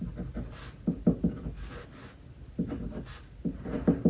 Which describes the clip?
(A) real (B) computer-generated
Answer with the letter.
A